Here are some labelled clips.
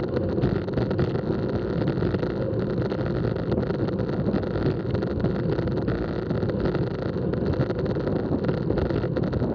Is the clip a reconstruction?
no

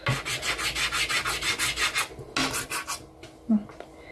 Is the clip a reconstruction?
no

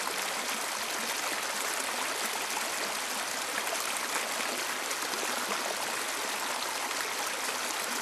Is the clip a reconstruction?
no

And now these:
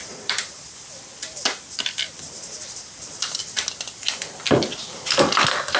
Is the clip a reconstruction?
yes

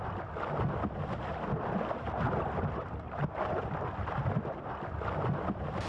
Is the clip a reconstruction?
no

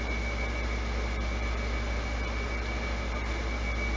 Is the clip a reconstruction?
no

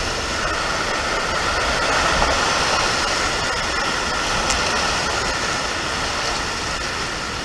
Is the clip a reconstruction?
no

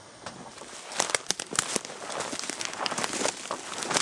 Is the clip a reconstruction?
no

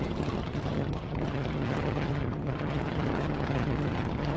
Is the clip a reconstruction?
yes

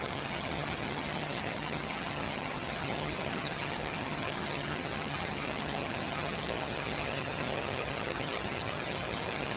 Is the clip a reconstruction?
yes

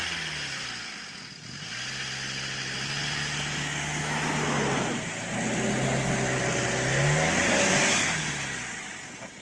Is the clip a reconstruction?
no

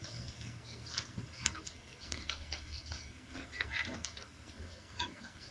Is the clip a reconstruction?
yes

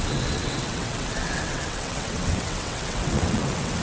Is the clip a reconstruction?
yes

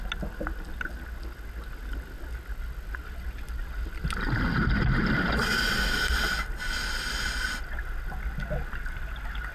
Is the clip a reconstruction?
no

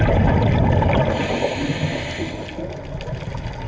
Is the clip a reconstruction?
no